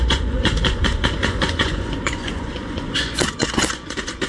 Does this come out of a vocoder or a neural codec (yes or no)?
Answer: yes